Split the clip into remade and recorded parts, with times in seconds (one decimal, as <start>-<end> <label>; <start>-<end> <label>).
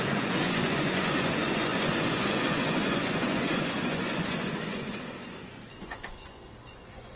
0.0-7.2 remade